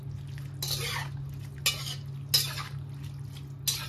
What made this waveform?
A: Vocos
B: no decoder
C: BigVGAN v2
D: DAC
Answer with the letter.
B